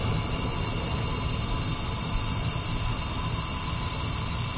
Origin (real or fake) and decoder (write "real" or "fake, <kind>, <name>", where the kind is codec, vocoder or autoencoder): real